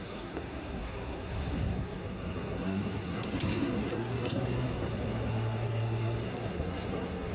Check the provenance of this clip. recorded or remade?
remade